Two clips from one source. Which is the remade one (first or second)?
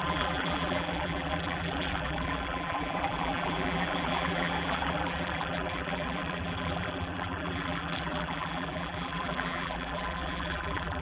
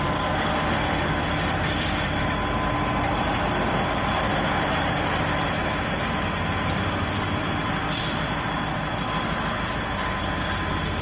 first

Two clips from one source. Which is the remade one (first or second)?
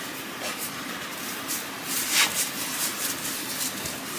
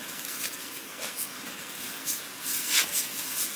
second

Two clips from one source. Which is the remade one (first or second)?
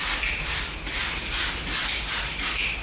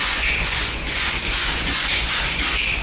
second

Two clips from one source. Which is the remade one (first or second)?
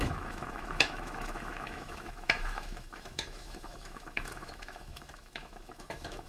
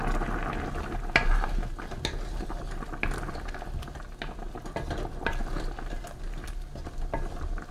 first